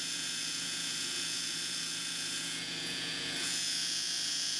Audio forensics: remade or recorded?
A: remade